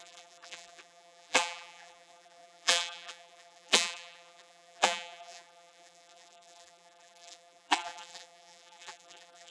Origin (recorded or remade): remade